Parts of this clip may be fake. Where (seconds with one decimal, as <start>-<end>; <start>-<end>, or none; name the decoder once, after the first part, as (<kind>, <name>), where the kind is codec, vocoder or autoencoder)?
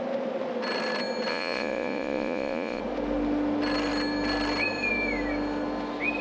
1.3-2.8 (vocoder, Vocos)